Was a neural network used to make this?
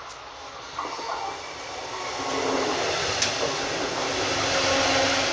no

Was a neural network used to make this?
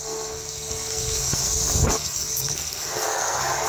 yes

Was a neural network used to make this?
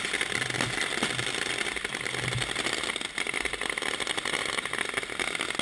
no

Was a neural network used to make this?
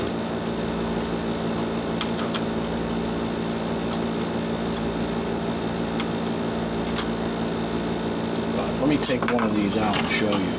no